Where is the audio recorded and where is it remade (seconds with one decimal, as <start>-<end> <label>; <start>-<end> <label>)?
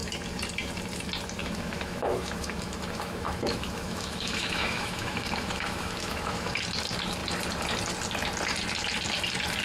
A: 0.0-1.4 recorded; 1.4-6.5 remade; 6.5-9.6 recorded